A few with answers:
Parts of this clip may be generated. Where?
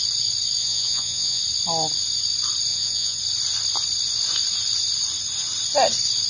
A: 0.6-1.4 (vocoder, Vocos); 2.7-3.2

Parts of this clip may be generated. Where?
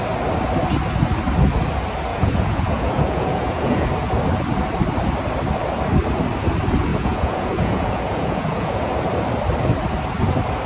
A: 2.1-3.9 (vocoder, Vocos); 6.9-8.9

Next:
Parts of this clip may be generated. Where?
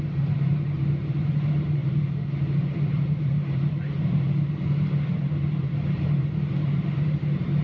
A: 0.0-7.6 (vocoder, BigVGAN v2)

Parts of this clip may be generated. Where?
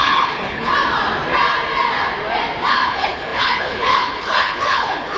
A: 0.0-0.7 (codec, HILCodec); 2.7-5.2